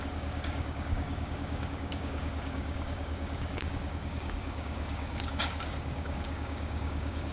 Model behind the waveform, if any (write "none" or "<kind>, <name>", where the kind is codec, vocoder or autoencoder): codec, DAC